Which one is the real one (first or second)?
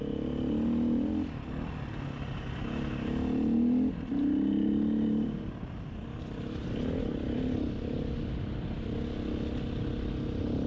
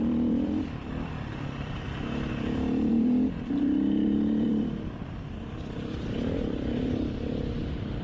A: first